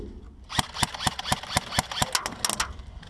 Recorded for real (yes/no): yes